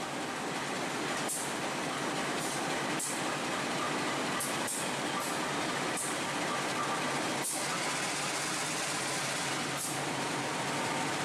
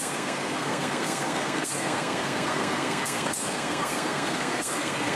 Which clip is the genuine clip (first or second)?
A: first